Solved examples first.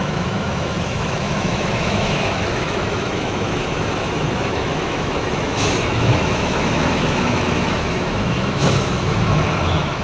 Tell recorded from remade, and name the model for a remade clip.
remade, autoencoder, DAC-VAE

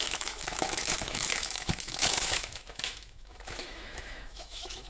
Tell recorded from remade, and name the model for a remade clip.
remade, autoencoder, DAC-VAE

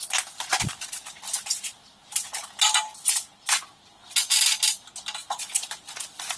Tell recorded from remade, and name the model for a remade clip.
recorded